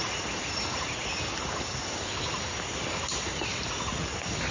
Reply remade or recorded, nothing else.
recorded